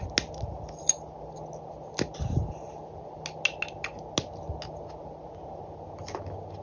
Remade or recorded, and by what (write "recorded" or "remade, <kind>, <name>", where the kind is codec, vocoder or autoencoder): recorded